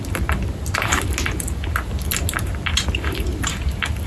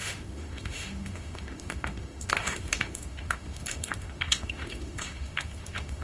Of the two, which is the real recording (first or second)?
first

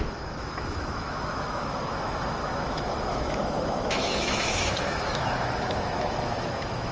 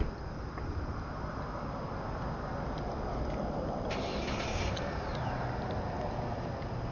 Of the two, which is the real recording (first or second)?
second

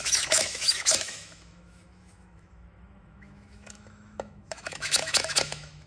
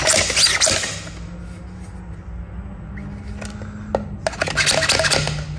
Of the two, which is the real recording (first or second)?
second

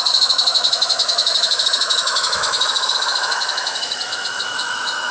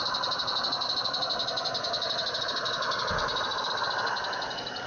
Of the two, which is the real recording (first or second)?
second